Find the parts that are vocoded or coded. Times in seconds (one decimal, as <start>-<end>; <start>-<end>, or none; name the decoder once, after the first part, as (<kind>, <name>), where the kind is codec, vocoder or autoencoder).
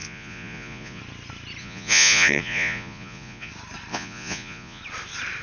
0.0-1.0 (vocoder, Vocos); 1.6-3.5; 3.9-4.8